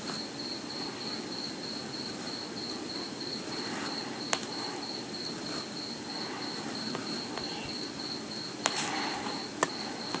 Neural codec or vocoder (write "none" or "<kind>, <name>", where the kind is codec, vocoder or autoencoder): none